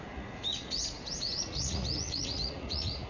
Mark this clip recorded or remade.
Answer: remade